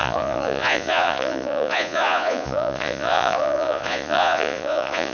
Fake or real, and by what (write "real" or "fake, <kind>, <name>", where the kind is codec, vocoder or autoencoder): fake, vocoder, Vocos